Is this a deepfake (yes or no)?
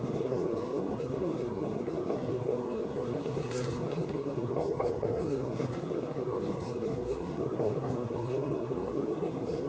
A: yes